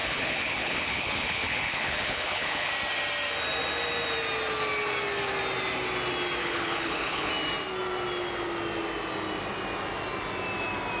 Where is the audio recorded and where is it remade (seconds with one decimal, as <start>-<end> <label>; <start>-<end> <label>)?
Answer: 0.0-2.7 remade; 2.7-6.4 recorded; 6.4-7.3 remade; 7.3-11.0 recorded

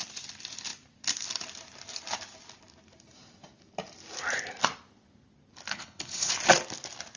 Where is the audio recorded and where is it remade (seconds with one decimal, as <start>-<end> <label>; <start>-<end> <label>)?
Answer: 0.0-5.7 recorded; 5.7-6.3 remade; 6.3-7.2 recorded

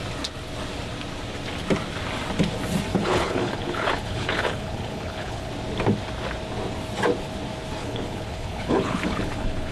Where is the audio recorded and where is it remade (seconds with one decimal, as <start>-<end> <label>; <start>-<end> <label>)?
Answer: 0.0-2.9 recorded; 2.9-5.5 remade; 5.5-7.8 recorded; 7.8-9.7 remade

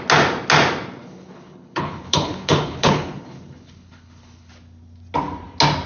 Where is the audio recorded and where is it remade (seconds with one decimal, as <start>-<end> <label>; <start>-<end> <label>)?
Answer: 0.0-1.0 recorded; 1.0-4.5 remade; 4.5-5.9 recorded